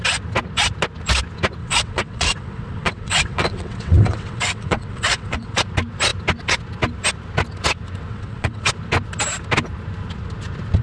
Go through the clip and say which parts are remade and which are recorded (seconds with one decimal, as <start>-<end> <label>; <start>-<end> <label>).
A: 0.0-1.6 recorded; 1.6-5.6 remade; 5.6-8.1 recorded; 8.1-8.7 remade; 8.7-10.8 recorded